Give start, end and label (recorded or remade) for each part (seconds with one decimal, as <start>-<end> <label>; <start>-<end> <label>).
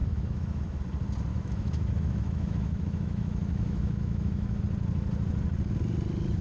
0.0-0.8 remade; 0.8-1.3 recorded; 1.3-4.6 remade; 4.6-6.4 recorded